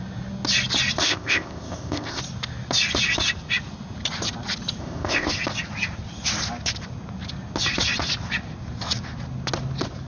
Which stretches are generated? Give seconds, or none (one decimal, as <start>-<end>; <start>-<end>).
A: 1.0-2.2; 4.8-5.3